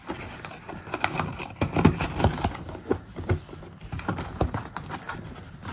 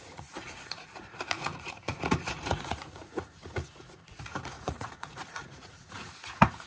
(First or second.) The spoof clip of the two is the second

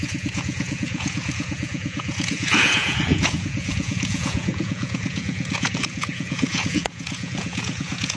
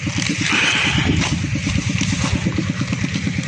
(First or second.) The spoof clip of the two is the first